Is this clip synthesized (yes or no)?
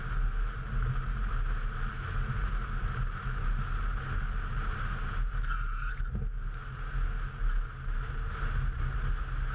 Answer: no